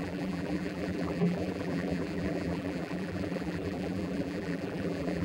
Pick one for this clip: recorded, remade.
remade